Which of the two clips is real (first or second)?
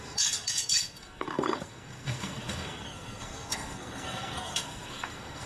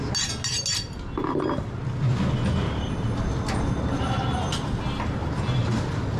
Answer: second